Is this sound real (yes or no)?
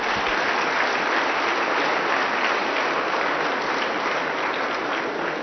yes